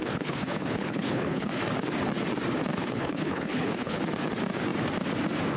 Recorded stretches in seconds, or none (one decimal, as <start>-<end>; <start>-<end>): 1.5-2.8; 4.0-5.6